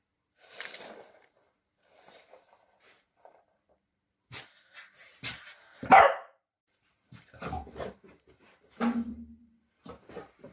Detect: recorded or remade remade